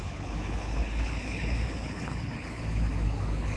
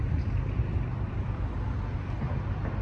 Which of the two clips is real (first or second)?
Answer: second